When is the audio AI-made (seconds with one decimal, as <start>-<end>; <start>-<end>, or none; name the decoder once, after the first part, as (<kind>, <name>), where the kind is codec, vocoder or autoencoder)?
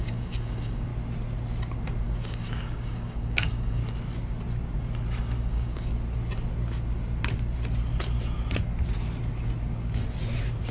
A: 0.0-0.9 (codec, DAC); 2.0-3.8; 5.2-5.9